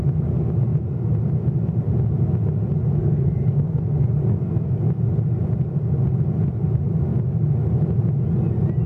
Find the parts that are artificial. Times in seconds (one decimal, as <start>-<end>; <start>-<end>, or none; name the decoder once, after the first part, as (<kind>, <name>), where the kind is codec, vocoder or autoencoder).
3.0-3.9 (codec, SNAC); 4.3-4.8